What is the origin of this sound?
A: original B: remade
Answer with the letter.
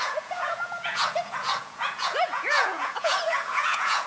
B